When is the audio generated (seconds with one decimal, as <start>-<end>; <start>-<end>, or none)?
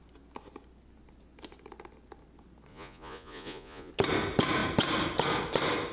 2.7-3.9